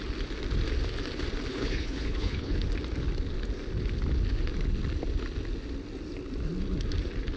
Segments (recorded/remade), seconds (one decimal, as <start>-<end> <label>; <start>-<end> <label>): 0.0-1.5 recorded; 1.5-2.6 remade; 2.6-7.4 recorded

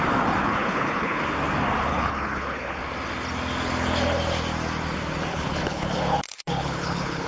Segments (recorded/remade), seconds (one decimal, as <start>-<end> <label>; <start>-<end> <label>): 0.0-0.4 recorded; 0.4-1.2 remade; 1.2-1.9 recorded; 1.9-2.8 remade; 2.8-5.3 recorded; 5.3-7.3 remade

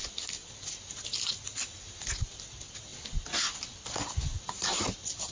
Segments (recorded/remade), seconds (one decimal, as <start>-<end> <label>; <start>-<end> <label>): 0.0-5.3 recorded

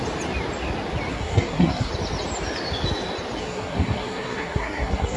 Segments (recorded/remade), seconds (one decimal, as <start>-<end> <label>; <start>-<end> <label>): 0.0-1.1 recorded; 1.1-1.9 remade; 1.9-3.4 recorded; 3.4-5.2 remade

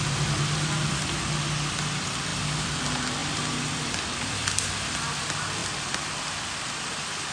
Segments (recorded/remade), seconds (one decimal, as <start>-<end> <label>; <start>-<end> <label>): 0.0-2.3 recorded; 2.3-2.8 remade; 2.8-3.2 recorded; 3.2-5.1 remade; 5.1-7.3 recorded